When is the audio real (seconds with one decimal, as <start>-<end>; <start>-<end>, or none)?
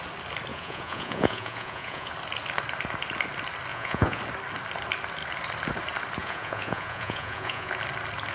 0.0-0.5; 2.1-3.7; 4.2-6.2; 7.7-8.3